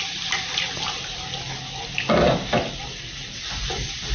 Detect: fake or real real